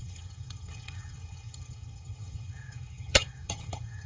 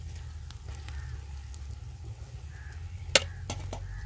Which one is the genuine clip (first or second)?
second